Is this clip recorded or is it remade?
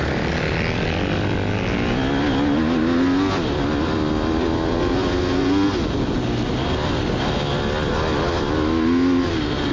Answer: recorded